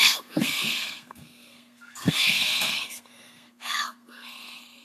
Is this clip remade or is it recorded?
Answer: remade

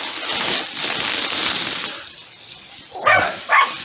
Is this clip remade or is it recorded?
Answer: recorded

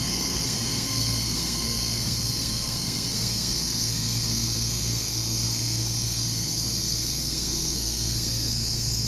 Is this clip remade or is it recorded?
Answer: remade